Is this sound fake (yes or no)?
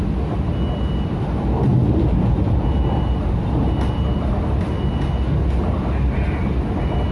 no